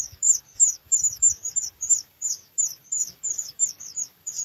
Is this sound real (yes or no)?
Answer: no